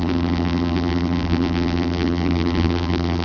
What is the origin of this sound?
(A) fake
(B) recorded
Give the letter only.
A